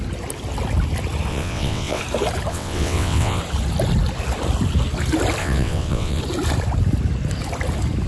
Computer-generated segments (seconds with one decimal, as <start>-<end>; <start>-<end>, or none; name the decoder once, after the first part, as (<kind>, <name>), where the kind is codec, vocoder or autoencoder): 1.3-2.0 (vocoder, WaveNeXt); 2.5-3.4; 5.4-6.2